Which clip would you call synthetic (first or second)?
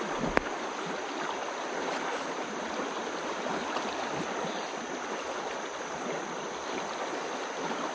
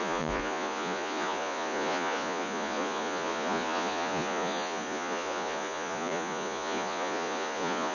second